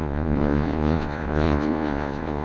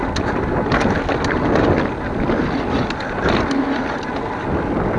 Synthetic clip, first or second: first